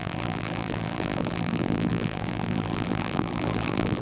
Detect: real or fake fake